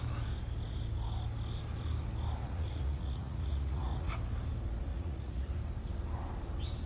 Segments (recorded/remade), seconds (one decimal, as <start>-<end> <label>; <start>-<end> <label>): 0.0-2.4 recorded; 2.4-4.1 remade; 4.1-4.9 recorded; 4.9-5.5 remade; 5.5-6.9 recorded

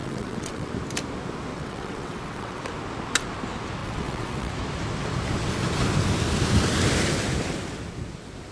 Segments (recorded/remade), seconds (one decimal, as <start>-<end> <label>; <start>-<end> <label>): 0.0-0.7 remade; 0.7-1.5 recorded; 1.5-2.6 remade; 2.6-3.8 recorded; 3.8-4.5 remade; 4.5-8.5 recorded

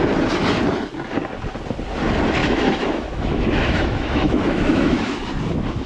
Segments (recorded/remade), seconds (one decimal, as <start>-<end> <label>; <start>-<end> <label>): 0.0-2.4 recorded; 2.4-5.2 remade; 5.2-5.9 recorded